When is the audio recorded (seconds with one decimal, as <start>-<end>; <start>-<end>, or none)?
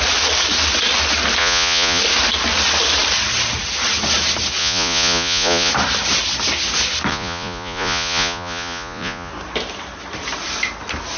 0.0-1.4; 2.0-4.6; 5.7-7.1; 9.3-11.2